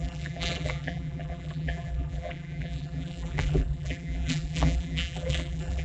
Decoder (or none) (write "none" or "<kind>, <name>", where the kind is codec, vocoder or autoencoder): vocoder, BigVGAN v2